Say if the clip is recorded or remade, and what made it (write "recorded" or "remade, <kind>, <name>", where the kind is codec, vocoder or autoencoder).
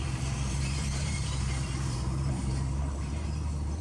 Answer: remade, vocoder, BigVGAN v2